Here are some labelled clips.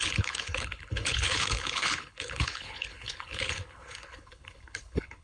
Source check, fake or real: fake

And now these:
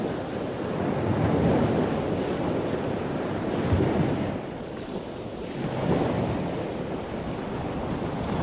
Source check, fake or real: real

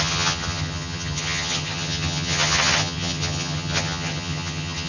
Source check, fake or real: fake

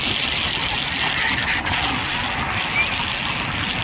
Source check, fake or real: real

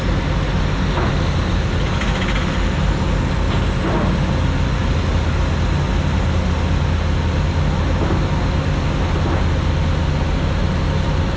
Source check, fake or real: real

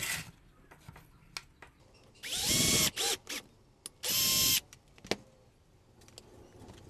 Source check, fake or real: real